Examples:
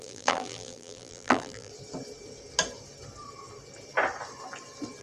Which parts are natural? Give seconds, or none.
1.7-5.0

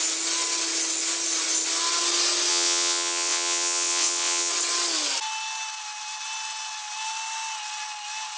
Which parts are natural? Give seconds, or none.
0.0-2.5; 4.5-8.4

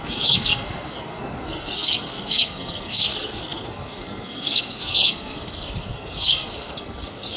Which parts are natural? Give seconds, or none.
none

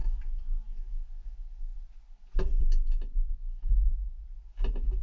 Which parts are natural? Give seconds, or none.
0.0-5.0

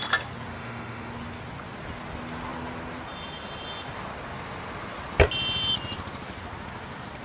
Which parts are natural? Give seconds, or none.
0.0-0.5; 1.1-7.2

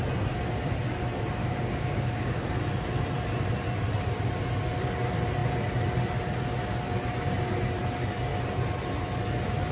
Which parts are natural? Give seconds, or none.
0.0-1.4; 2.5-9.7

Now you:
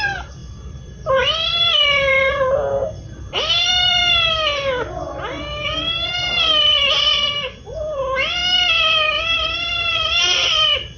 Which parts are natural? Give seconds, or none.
4.0-4.9; 8.4-9.2

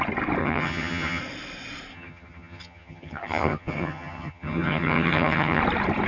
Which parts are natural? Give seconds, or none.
0.0-0.4; 1.2-1.9; 5.6-6.1